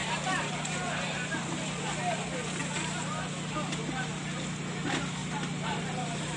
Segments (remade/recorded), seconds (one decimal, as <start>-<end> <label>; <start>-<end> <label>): 0.0-1.8 remade; 1.8-5.2 recorded; 5.2-5.8 remade; 5.8-6.4 recorded